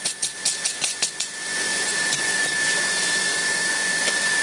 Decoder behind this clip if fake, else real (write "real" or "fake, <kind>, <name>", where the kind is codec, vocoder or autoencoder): fake, vocoder, Vocos